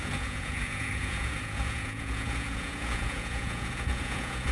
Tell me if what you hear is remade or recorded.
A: remade